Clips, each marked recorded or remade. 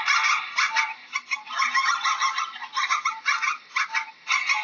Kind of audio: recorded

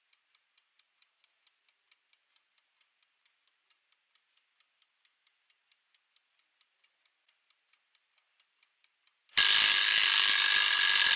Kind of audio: recorded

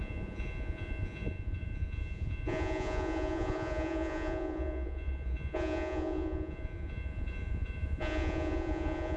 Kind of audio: remade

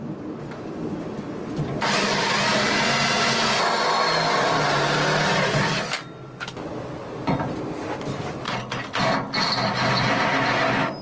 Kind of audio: recorded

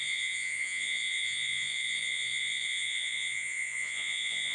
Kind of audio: remade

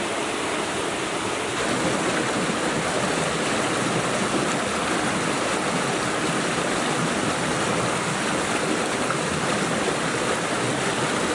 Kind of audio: recorded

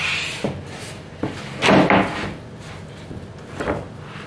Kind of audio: recorded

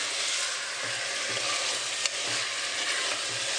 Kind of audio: recorded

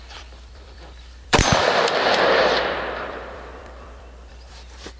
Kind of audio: remade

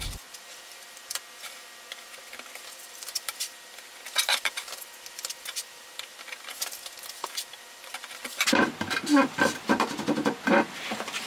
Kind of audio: remade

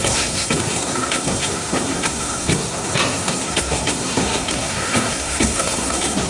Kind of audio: remade